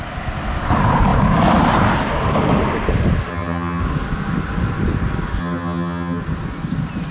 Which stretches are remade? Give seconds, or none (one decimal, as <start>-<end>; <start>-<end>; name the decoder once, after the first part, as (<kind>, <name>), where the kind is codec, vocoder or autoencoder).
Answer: 3.3-3.8 (vocoder, HiFi-GAN); 5.4-6.2